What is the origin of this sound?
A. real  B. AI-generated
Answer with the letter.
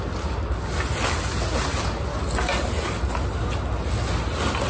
A